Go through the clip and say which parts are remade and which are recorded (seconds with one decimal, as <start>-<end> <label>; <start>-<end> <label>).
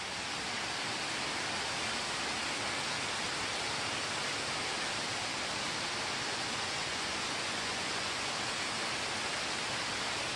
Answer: 0.0-6.3 recorded; 6.3-8.3 remade; 8.3-10.4 recorded